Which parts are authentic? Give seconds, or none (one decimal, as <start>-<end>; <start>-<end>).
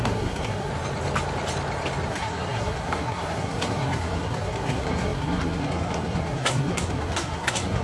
0.7-2.1